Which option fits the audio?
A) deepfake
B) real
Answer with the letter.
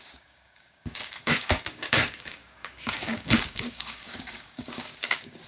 A